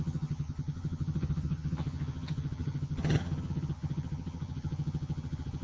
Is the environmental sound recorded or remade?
remade